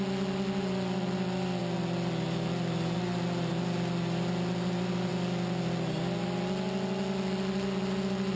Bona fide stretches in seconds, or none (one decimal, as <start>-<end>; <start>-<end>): 0.0-8.4